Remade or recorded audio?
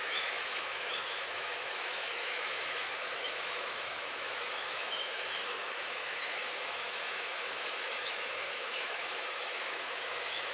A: remade